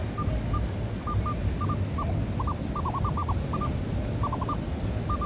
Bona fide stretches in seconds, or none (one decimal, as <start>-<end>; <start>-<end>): 0.0-5.3